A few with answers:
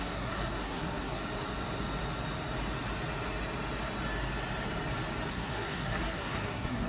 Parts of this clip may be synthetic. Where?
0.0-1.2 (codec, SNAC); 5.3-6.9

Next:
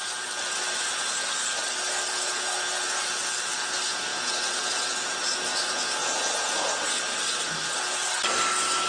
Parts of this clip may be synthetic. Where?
0.0-4.1 (vocoder, BigVGAN v2); 5.4-6.0; 7.4-8.9

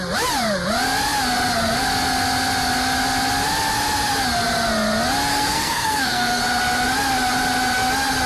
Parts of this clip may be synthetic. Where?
5.3-6.4 (codec, SNAC)

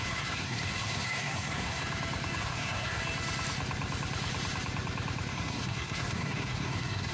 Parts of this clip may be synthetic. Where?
0.0-1.8 (codec, SNAC); 2.4-3.0; 5.3-7.1

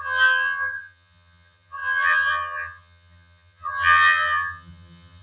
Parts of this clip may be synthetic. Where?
0.0-5.2 (vocoder, HiFi-GAN)

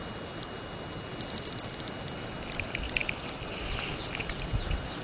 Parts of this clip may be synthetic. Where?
none

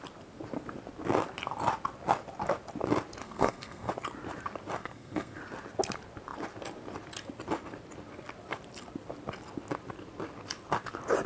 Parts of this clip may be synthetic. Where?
3.2-3.9 (codec, SNAC); 4.8-5.4